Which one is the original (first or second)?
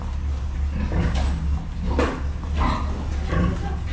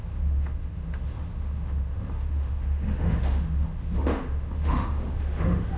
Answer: first